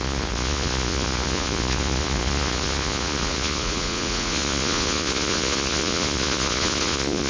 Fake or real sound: fake